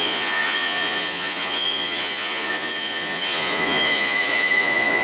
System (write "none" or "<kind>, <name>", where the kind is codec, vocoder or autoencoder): vocoder, Vocos